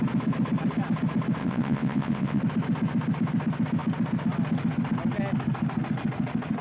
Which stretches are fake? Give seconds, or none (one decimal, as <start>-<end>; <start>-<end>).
1.4-2.4